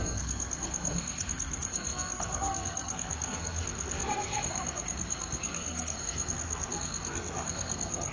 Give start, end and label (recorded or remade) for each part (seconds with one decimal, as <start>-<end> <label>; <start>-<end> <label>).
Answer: 0.0-8.1 remade